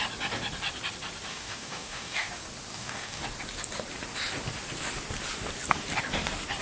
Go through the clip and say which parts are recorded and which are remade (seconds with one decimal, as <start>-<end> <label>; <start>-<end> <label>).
0.0-1.3 recorded; 1.3-2.3 remade; 2.3-2.7 recorded; 2.7-3.2 remade; 3.2-6.6 recorded